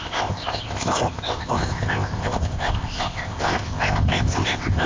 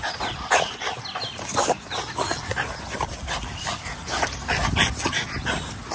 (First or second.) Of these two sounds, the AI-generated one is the first